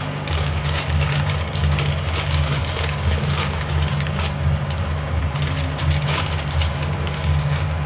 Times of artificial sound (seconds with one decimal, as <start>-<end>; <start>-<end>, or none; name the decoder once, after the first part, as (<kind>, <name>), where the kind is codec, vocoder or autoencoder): 0.0-5.2 (codec, DAC); 5.8-7.9